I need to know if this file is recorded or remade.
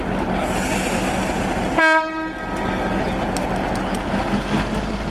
recorded